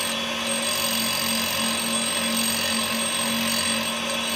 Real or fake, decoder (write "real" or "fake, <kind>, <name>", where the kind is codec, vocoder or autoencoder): real